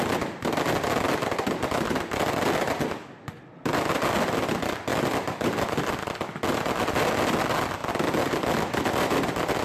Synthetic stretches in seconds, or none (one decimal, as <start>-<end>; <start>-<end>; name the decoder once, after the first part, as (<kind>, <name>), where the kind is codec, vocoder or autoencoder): 4.9-5.7 (vocoder, BigVGAN v2); 7.8-9.6